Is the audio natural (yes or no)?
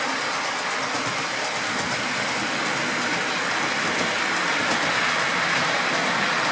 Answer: yes